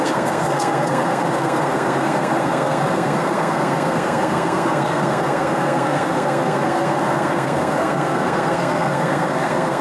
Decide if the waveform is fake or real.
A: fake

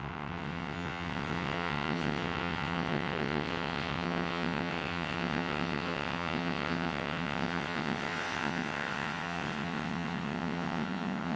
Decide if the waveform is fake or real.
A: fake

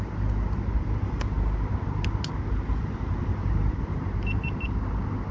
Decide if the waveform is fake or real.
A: real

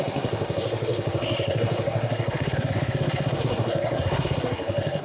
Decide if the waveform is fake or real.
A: fake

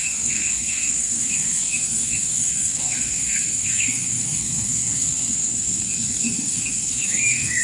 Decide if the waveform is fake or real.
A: fake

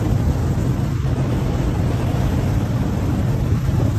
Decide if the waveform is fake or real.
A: fake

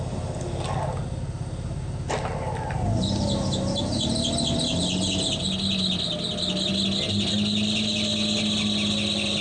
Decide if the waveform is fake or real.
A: real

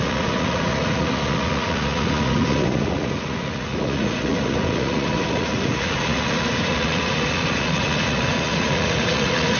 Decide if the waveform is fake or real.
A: fake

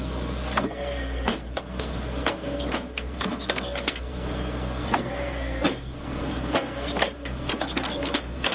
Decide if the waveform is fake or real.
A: fake